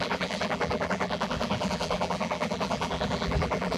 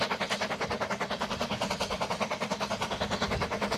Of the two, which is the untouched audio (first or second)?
second